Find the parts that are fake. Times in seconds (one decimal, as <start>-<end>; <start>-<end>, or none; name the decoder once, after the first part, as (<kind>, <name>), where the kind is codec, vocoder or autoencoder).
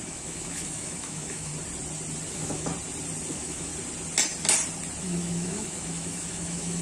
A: 0.0-1.5 (autoencoder, DAC-VAE); 2.3-2.7; 3.3-3.7; 5.0-6.8